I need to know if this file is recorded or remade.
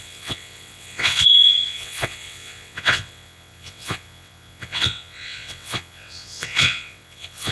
remade